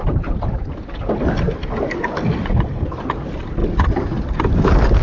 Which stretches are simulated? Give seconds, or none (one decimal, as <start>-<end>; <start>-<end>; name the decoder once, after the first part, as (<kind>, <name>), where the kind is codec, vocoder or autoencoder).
none